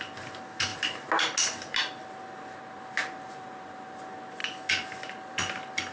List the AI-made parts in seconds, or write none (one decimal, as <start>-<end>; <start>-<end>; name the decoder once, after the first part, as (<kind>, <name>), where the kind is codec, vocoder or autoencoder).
none